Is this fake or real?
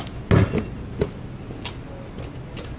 real